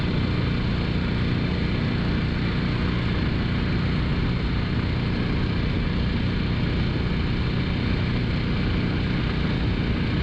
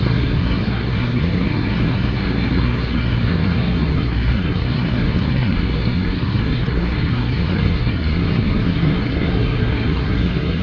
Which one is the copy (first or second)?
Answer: second